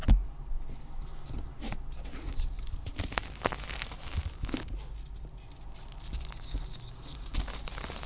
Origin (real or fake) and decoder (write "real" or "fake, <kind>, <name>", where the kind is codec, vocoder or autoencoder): real